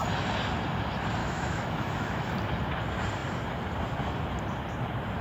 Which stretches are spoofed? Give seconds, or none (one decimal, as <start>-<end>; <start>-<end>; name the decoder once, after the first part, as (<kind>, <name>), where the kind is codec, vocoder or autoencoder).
1.2-2.3 (autoencoder, DAC-VAE)

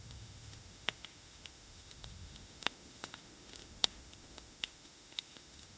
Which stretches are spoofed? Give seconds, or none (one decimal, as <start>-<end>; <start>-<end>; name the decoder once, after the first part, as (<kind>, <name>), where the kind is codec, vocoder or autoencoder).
0.0-5.8 (autoencoder, DAC-VAE)

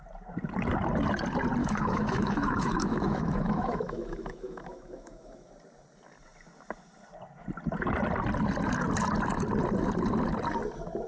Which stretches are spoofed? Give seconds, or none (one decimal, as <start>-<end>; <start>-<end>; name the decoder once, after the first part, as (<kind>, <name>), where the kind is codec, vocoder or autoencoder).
1.6-5.5 (autoencoder, DAC-VAE)